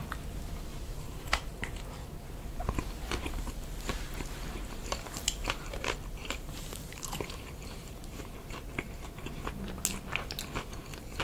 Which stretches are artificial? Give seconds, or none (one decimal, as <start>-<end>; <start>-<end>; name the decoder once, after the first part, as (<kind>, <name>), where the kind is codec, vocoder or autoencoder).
0.7-1.8 (vocoder, BigVGAN v2); 3.2-8.2